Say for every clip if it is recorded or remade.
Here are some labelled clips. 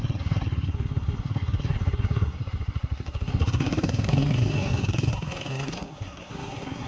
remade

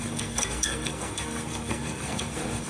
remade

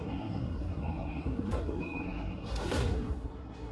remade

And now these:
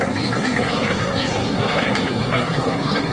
remade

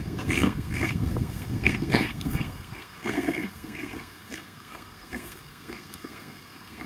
remade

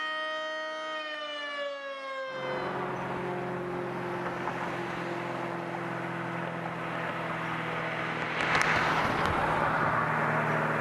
recorded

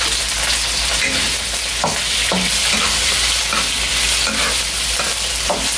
recorded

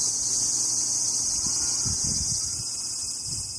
recorded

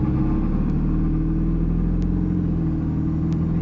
recorded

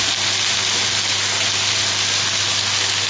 recorded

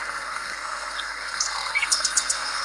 remade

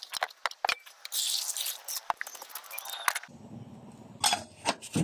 recorded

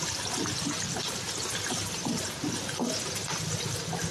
recorded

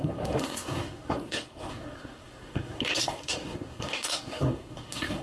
remade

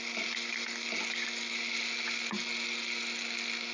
recorded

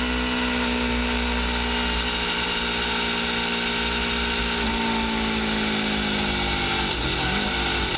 recorded